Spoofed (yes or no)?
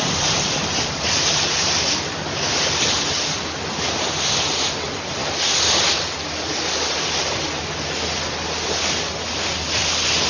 no